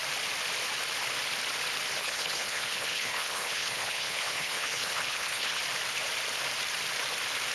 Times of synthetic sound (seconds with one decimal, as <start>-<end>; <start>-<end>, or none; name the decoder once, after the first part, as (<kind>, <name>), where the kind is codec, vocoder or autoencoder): 2.0-5.6 (codec, HILCodec)